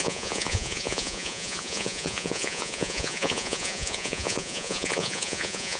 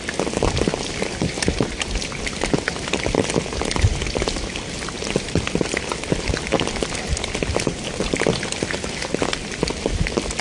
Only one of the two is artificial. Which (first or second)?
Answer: first